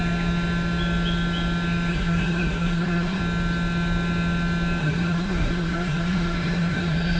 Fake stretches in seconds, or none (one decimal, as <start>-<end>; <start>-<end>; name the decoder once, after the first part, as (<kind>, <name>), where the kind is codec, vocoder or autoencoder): 1.9-3.2 (codec, SNAC); 4.8-7.2